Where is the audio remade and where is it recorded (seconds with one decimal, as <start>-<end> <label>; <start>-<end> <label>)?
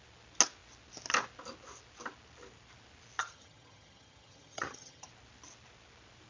0.0-3.3 recorded; 3.3-5.1 remade; 5.1-6.3 recorded